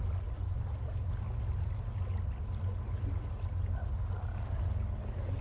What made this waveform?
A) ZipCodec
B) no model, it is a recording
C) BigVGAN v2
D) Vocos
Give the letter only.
B